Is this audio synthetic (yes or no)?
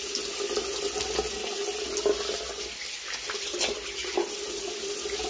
no